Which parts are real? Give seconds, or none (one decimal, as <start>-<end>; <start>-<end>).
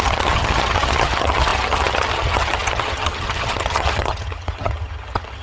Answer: none